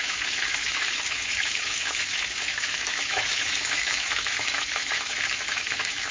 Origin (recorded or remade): remade